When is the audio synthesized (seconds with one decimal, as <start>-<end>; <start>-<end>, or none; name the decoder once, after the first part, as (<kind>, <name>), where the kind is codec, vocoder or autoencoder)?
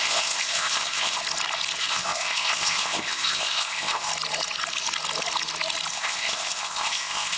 0.0-1.2 (codec, ZipCodec); 1.8-4.1; 5.9-7.4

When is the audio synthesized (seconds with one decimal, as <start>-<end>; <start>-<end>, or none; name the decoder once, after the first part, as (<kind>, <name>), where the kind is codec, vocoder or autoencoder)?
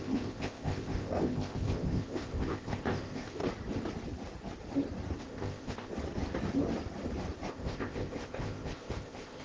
0.0-3.4 (codec, ZipCodec); 5.2-5.9; 7.5-9.4